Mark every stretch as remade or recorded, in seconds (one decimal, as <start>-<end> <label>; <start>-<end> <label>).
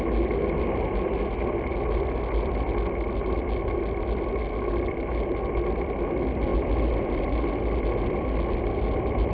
0.0-9.3 recorded